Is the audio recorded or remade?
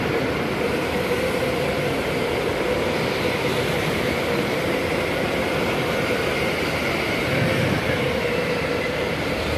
recorded